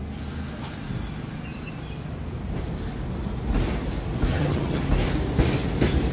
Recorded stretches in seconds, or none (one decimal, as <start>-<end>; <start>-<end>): 0.0-4.3; 4.9-6.1